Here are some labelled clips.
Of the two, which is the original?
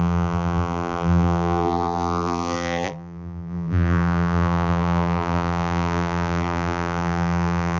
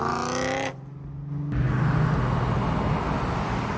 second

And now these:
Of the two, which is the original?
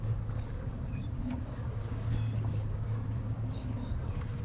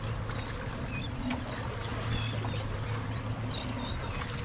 second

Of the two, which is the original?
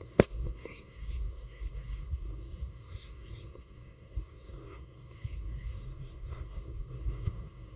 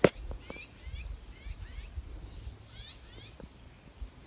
second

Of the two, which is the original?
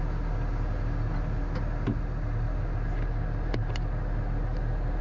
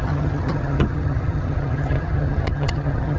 first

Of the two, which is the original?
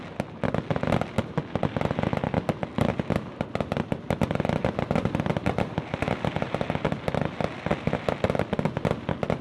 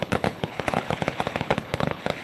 first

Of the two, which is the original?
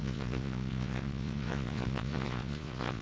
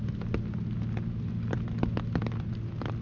second